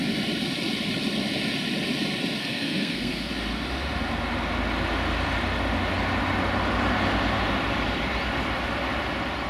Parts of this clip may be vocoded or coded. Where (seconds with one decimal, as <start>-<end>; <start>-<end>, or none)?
2.4-3.3